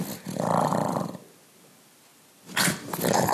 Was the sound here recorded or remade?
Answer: recorded